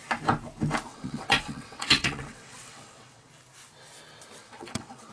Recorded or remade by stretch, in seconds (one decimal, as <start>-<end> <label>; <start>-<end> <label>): 0.0-0.9 recorded; 0.9-3.3 remade; 3.3-4.4 recorded; 4.4-5.1 remade